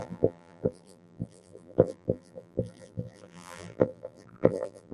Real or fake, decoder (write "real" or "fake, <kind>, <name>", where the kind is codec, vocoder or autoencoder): fake, vocoder, BigVGAN v2